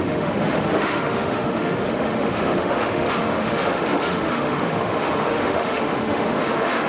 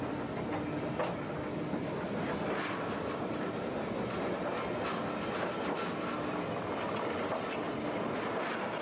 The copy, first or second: first